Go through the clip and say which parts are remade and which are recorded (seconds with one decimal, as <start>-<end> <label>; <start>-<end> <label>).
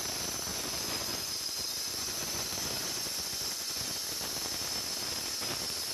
0.0-0.5 recorded; 0.5-4.0 remade; 4.0-5.9 recorded